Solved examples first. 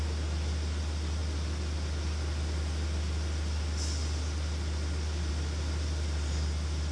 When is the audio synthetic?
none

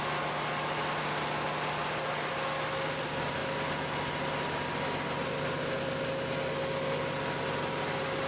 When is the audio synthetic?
none

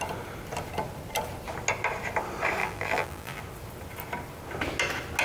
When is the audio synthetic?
2.6-3.4 (vocoder, BigVGAN v2)

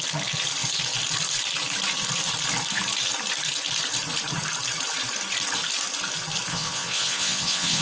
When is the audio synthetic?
6.5-7.8 (vocoder, WaveNeXt)

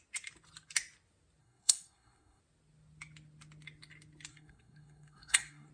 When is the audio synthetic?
1.4-2.4 (codec, SNAC); 4.3-5.7

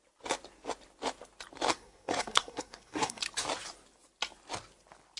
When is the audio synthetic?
1.7-3.2 (codec, SNAC)

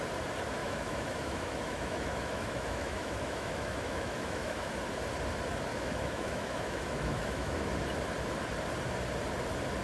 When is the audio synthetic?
0.6-4.7 (autoencoder, DAC-VAE); 5.7-7.7